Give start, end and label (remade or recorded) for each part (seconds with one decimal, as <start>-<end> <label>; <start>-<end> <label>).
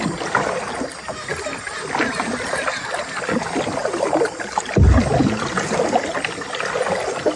0.0-7.4 recorded